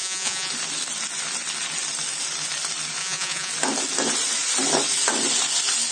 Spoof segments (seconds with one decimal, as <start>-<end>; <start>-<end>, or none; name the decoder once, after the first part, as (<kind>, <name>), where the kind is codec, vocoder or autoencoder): 0.0-0.5 (vocoder, Vocos); 3.0-3.5